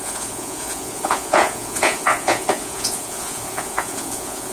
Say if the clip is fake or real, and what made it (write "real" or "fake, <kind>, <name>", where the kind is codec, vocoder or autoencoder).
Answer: fake, vocoder, Vocos